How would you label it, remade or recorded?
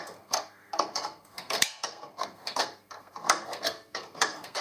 remade